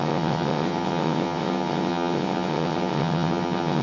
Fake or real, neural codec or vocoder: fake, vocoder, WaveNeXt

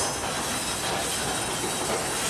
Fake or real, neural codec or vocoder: real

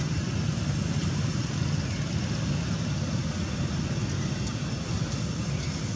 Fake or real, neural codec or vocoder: real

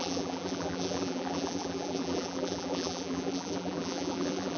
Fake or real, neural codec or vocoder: fake, vocoder, BigVGAN v2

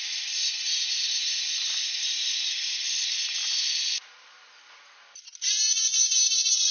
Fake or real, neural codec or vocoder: real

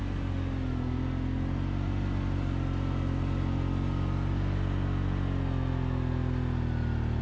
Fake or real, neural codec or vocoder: real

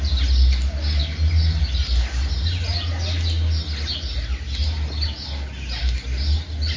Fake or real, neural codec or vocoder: real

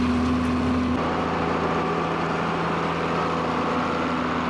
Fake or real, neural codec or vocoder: real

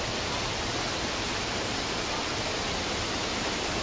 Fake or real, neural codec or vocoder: real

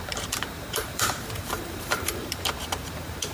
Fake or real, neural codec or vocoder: fake, vocoder, BigVGAN v2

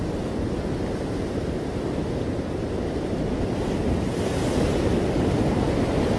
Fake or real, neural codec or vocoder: real